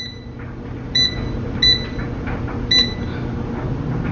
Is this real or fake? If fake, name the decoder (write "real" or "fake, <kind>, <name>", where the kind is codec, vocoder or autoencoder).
real